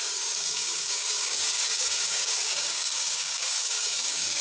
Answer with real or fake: fake